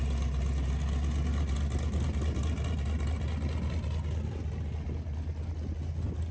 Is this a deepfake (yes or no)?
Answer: no